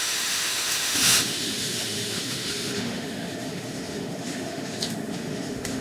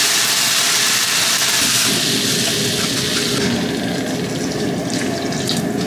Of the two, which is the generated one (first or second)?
first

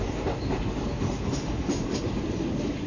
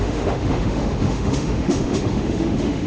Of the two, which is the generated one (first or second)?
second